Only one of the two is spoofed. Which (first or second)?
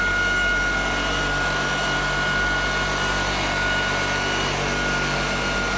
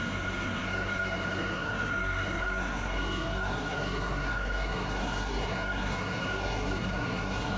second